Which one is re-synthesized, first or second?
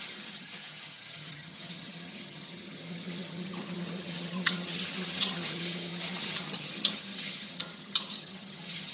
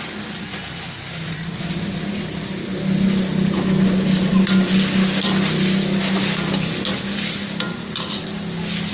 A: first